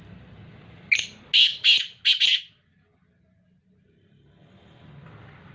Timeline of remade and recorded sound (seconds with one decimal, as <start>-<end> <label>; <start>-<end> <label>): 0.0-5.5 recorded